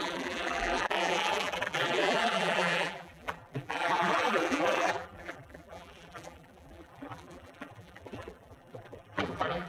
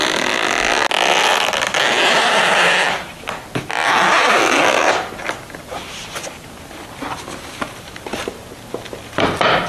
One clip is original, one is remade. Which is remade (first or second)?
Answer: first